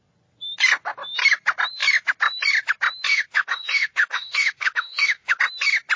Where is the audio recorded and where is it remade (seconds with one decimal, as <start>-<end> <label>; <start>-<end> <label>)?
0.0-3.1 recorded; 3.1-5.4 remade; 5.4-6.0 recorded